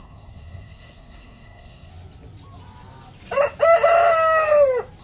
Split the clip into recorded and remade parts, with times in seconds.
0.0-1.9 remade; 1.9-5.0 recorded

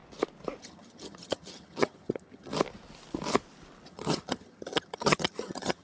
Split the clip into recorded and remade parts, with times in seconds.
0.0-0.6 recorded; 0.6-2.5 remade; 2.5-3.9 recorded; 3.9-5.8 remade

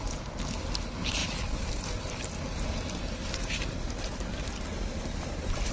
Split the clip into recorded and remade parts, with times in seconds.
0.0-5.7 recorded

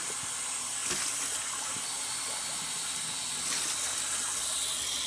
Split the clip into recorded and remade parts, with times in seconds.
0.0-5.1 recorded